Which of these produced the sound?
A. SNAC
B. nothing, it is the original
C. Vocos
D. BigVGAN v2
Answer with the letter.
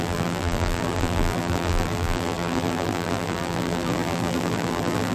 D